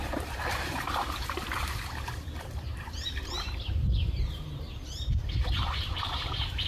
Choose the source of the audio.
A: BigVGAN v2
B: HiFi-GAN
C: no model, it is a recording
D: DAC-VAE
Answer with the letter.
A